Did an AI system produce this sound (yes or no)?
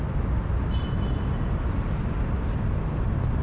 no